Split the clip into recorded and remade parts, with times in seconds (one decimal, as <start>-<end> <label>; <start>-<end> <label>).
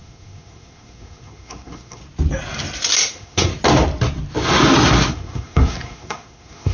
0.0-2.0 remade; 2.0-3.1 recorded; 3.1-3.5 remade; 3.5-5.1 recorded; 5.1-6.7 remade